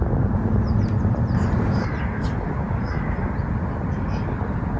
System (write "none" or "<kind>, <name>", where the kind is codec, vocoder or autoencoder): none